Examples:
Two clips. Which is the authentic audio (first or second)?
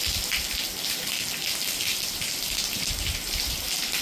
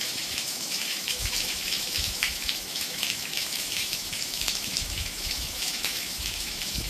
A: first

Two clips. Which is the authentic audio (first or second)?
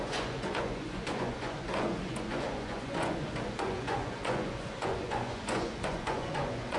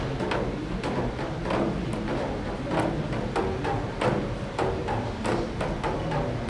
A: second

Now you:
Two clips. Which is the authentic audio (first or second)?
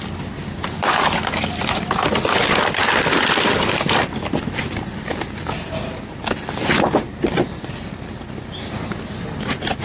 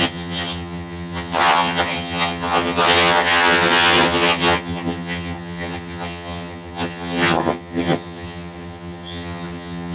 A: first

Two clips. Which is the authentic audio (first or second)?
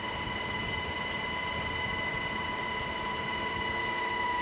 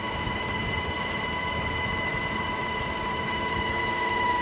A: first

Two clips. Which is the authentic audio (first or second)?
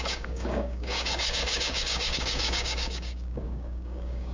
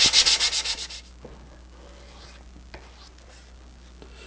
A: second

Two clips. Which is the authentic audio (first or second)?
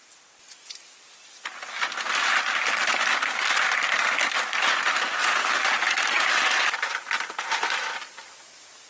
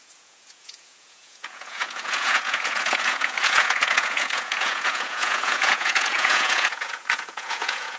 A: first